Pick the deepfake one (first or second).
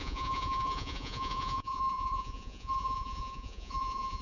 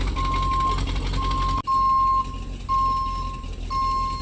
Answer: first